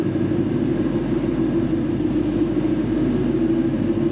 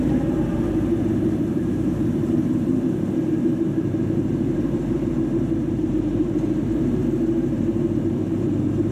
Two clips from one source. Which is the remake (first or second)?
second